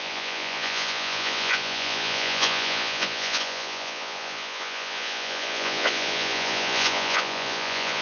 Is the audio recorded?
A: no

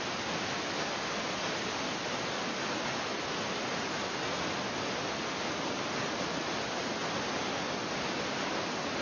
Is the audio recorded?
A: yes